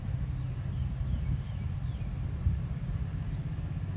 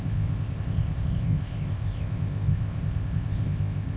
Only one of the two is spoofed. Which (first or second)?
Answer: second